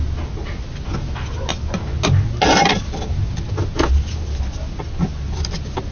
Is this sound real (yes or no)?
yes